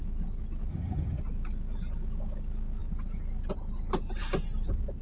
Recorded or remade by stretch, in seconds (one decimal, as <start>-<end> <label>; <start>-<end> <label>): 0.0-0.7 recorded; 0.7-1.2 remade; 1.2-5.0 recorded